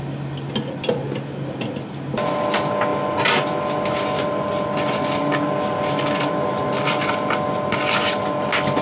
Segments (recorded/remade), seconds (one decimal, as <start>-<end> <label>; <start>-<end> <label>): 0.0-8.8 recorded